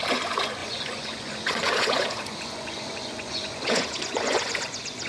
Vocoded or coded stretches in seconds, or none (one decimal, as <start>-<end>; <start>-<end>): 0.0-5.1